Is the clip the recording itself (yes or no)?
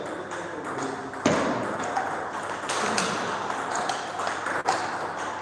yes